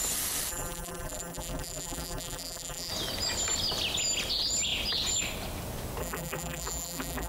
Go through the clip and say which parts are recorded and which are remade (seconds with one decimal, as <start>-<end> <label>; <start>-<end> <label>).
0.0-0.5 recorded; 0.5-2.9 remade; 2.9-6.0 recorded; 6.0-7.3 remade